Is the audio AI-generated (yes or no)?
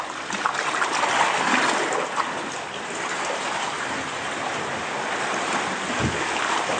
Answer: no